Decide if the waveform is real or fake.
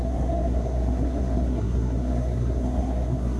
fake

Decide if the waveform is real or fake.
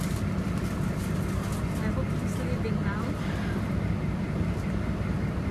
real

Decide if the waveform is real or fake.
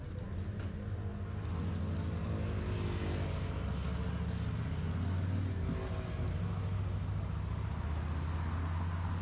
real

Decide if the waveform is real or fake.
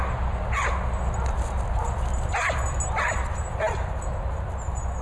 real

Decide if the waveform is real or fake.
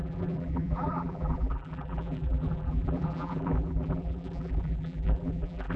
fake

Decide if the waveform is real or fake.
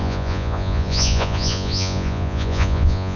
fake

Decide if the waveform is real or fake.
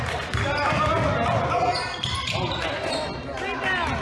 real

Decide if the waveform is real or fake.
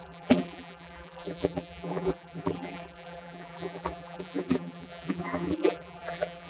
fake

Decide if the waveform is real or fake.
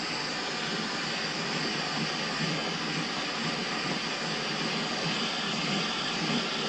real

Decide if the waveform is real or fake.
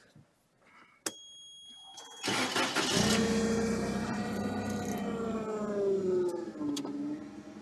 real